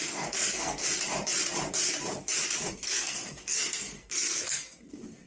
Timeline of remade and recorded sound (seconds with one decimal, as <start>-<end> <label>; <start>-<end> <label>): 0.0-0.8 remade; 0.8-2.7 recorded; 2.7-5.3 remade